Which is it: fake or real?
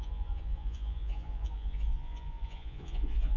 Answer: fake